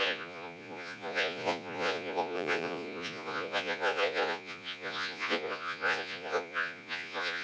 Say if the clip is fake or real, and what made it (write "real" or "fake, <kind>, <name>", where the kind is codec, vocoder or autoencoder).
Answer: fake, vocoder, Vocos